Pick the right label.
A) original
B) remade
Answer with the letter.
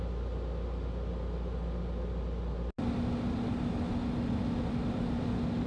A